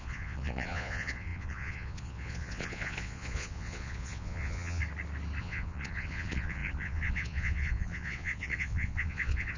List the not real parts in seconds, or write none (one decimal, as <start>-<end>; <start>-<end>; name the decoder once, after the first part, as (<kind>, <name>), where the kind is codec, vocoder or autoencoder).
0.0-4.8 (vocoder, Vocos); 5.4-9.6